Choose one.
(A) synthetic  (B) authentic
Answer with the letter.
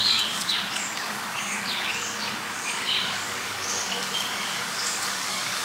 A